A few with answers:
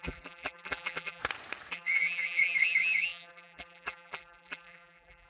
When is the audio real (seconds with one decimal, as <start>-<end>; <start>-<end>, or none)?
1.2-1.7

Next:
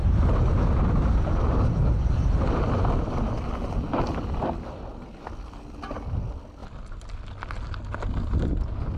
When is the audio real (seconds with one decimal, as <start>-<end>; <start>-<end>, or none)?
0.0-9.0

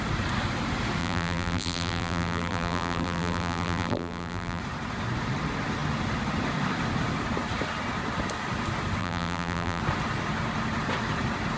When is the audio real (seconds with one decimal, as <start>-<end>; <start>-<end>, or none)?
0.0-1.0; 4.6-9.0; 9.8-11.6

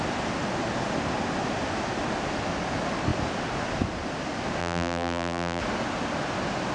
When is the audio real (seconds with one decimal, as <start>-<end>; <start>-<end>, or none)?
0.0-4.6; 5.6-6.7